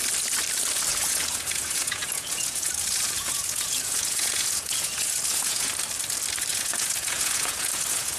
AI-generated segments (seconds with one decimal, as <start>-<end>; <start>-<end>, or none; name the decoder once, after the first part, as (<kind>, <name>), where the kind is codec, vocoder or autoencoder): 0.9-5.7 (vocoder, Vocos); 6.5-8.2